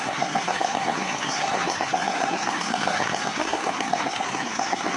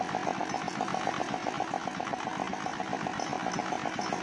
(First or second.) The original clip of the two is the second